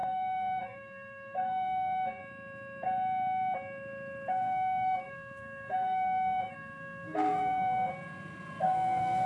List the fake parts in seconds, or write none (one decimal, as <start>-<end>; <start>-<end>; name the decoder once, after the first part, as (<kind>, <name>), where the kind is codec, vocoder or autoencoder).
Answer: 0.0-2.2 (codec, SNAC); 4.3-7.9; 8.6-9.3